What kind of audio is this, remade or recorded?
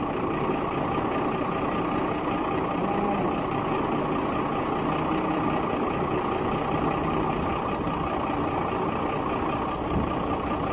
recorded